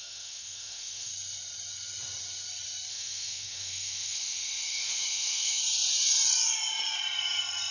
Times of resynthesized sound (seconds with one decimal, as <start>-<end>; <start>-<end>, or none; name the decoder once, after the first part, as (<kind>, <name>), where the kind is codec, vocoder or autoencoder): 0.0-1.1 (autoencoder, DAC-VAE); 2.9-5.6